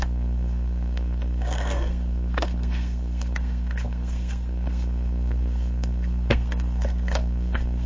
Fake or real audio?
fake